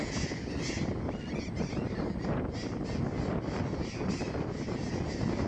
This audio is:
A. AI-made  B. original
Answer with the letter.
B